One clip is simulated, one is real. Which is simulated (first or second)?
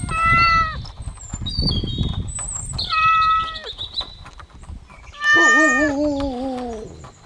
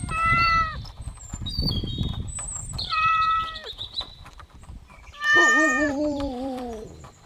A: second